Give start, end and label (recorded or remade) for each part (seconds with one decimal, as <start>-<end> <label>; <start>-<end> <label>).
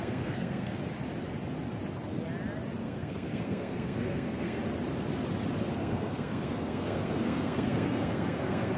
0.0-0.8 remade; 0.8-2.8 recorded; 2.8-4.6 remade; 4.6-5.8 recorded; 5.8-8.8 remade